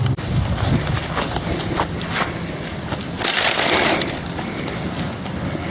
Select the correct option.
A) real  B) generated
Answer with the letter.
A